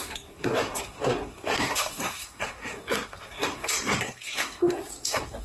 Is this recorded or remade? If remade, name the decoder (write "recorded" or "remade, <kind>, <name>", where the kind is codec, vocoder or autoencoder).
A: remade, codec, SNAC